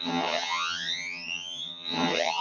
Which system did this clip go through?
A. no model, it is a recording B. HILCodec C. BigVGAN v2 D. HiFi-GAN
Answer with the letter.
D